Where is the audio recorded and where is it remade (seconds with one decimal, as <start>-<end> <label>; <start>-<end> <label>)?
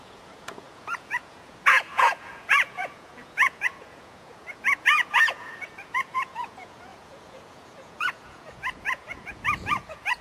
0.0-10.2 remade